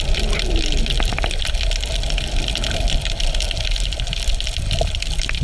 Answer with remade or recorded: recorded